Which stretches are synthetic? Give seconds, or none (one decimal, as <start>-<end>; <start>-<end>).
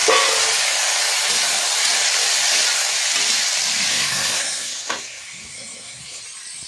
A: 3.9-6.2